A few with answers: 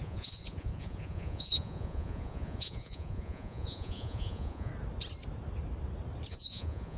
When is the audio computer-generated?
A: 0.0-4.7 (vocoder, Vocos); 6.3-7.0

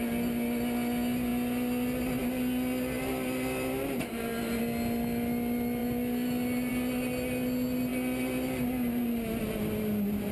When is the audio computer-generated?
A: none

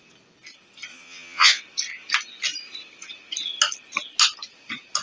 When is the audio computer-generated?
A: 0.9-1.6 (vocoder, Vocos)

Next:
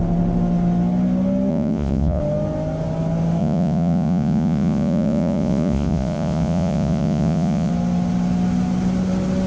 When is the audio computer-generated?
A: 1.5-2.2 (vocoder, Vocos); 3.4-7.7